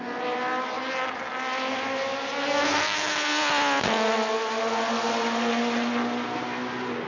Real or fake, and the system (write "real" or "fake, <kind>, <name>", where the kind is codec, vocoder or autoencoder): real